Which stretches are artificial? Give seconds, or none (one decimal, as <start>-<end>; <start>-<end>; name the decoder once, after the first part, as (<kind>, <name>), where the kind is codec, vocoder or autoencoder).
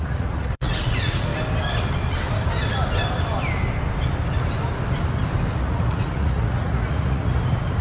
0.0-1.3 (vocoder, Vocos); 5.6-7.8